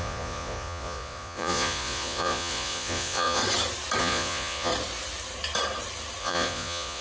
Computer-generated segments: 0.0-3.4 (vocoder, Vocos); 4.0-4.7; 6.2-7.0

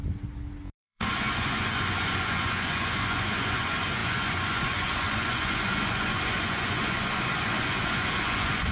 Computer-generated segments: 0.7-8.7 (vocoder, Vocos)

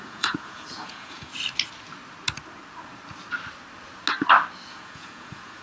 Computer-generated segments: 0.0-1.3 (vocoder, Vocos); 4.7-5.6

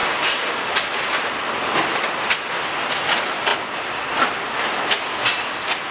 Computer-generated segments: none